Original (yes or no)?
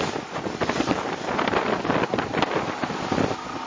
yes